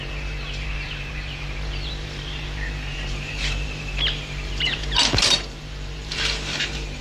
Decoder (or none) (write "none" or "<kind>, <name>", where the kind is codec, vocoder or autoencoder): vocoder, BigVGAN v2